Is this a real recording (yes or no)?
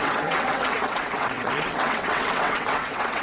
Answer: no